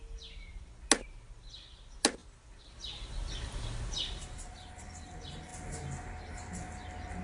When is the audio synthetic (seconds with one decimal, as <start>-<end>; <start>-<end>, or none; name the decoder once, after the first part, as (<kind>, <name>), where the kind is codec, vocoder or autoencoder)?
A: none